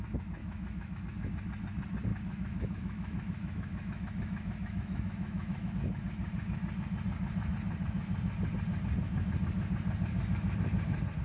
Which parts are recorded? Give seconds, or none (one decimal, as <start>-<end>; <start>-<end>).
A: 0.0-0.4; 1.0-2.1; 5.7-11.2